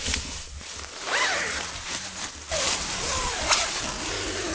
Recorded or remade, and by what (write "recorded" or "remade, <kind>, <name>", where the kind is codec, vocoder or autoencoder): recorded